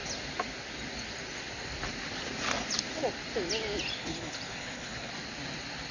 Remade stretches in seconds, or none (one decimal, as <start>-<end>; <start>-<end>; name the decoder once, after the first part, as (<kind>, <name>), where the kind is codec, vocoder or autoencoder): 4.0-5.1 (codec, HILCodec)